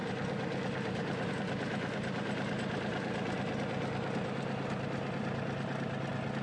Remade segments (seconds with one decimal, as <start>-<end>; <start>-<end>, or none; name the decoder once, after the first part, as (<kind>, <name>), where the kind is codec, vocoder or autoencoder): 0.0-1.3 (vocoder, BigVGAN v2)